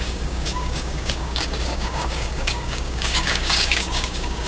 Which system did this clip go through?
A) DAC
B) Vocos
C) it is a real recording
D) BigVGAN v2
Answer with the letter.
A